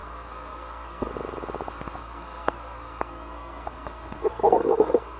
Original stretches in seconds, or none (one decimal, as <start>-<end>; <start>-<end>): 1.1-2.0